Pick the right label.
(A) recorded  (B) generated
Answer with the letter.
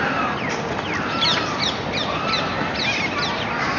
A